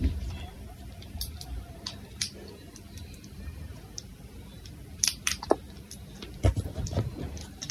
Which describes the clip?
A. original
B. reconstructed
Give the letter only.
B